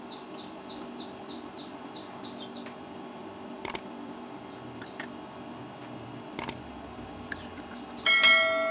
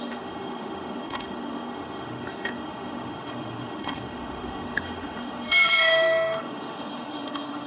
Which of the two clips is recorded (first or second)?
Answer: first